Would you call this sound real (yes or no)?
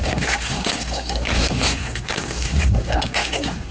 no